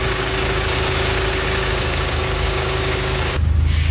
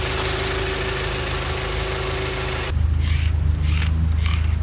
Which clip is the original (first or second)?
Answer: second